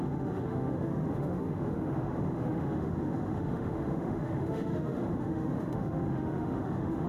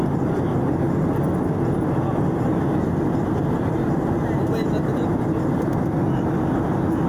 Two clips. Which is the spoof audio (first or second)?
first